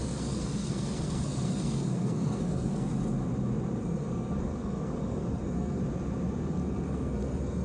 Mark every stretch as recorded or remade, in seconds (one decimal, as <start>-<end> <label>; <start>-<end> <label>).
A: 0.0-2.9 remade; 2.9-3.8 recorded; 3.8-5.8 remade; 5.8-6.5 recorded; 6.5-7.6 remade